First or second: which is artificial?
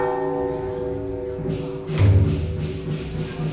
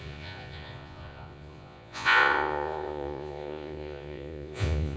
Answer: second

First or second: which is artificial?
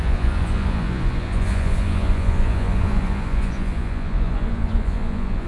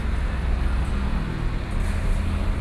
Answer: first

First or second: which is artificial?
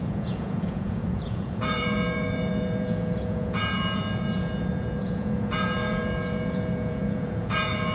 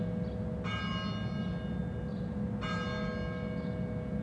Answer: first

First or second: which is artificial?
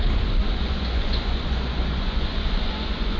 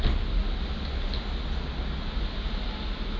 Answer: first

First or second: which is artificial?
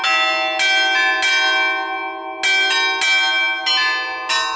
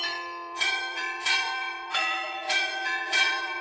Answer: second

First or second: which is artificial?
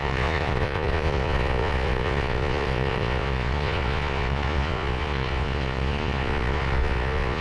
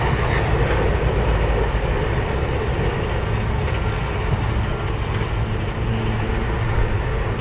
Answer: first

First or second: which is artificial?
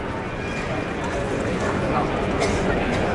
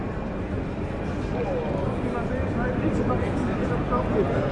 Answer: first